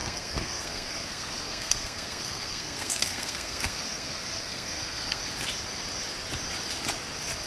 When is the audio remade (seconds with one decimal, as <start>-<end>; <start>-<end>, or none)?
0.0-5.2